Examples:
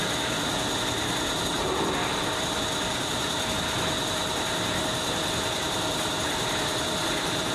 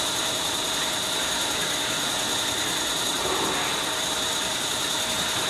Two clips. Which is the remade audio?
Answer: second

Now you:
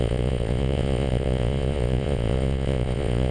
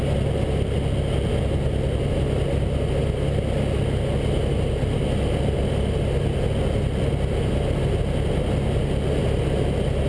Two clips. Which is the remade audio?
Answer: first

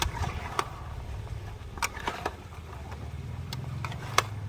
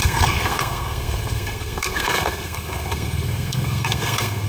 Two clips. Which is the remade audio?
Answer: second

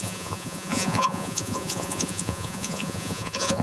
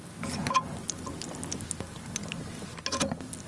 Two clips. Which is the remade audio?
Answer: first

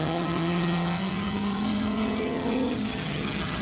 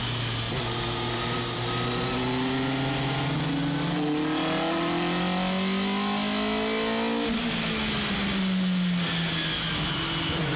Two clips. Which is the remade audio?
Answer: first